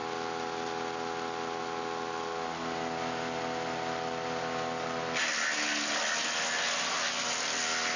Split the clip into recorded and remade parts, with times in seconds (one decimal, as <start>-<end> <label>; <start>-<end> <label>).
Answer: 0.0-8.0 recorded